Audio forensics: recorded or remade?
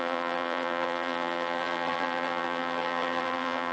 remade